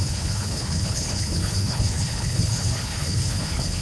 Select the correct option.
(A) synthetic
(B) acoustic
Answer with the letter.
A